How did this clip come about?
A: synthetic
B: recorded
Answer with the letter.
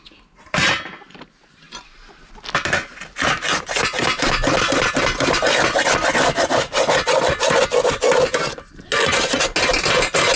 B